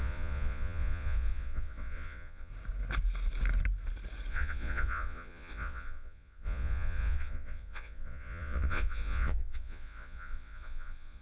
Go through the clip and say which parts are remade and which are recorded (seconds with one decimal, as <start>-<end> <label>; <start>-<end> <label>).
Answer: 0.0-2.5 remade; 2.5-4.3 recorded; 4.3-11.2 remade